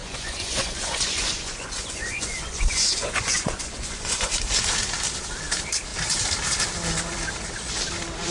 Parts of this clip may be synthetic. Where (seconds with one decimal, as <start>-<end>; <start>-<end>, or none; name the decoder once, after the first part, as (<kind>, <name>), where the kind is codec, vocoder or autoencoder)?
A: 0.0-4.3 (vocoder, Vocos)